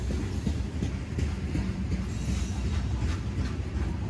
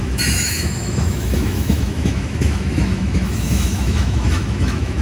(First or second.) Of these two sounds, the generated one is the second